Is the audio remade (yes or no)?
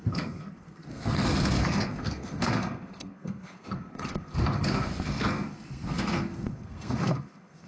yes